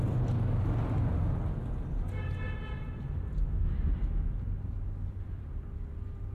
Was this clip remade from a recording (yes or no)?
no